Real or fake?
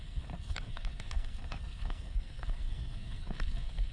fake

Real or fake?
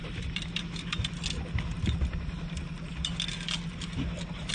real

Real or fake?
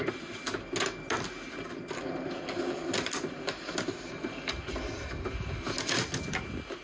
real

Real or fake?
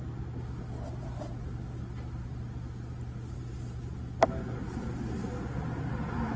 real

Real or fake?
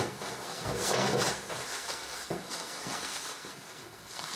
fake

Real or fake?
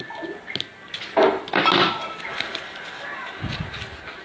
real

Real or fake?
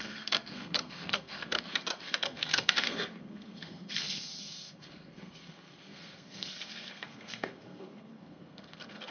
fake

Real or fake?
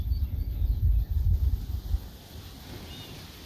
real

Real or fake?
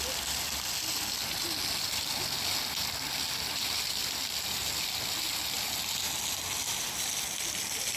real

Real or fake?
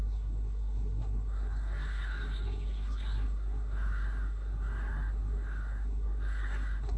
fake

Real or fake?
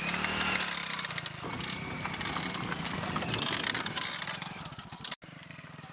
real